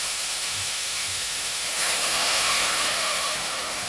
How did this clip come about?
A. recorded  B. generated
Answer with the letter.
B